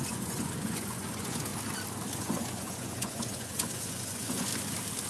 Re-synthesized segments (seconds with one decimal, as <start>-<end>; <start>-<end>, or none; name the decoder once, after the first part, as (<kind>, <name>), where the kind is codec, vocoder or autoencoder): 0.0-1.5 (vocoder, Vocos); 2.2-4.5